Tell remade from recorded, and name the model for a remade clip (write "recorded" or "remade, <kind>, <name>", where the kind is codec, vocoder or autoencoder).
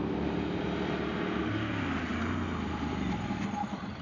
recorded